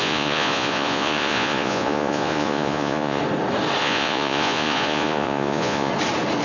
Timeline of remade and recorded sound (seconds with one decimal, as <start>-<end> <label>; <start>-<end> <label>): 0.0-3.2 remade; 3.2-3.8 recorded; 3.8-5.9 remade; 5.9-6.4 recorded